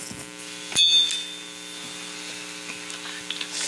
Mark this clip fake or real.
real